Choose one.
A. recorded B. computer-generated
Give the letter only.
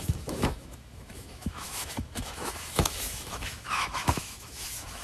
B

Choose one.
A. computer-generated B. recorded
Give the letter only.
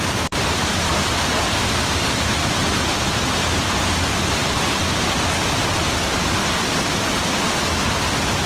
B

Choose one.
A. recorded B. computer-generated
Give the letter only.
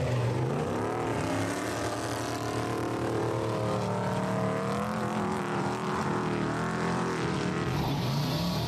A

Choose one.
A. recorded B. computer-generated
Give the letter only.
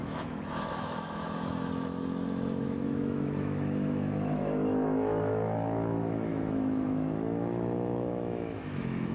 B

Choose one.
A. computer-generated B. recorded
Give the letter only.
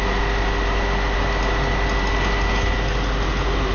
B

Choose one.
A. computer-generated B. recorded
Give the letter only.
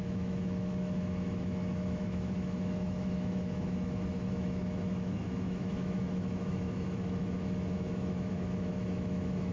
A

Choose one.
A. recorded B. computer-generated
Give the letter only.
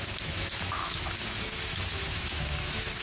B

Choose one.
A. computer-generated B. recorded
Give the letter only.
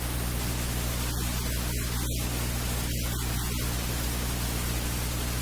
B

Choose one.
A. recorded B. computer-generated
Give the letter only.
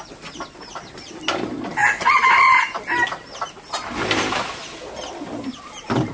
A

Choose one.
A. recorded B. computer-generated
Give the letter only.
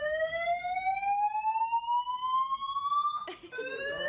B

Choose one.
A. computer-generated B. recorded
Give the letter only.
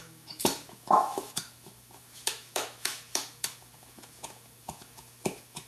A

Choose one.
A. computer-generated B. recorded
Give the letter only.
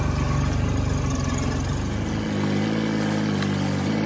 B